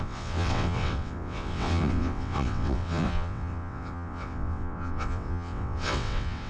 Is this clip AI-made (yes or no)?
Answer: yes